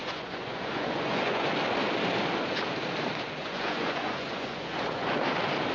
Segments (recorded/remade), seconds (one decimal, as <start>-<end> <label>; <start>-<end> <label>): 0.0-1.5 remade; 1.5-3.4 recorded; 3.4-5.2 remade; 5.2-5.7 recorded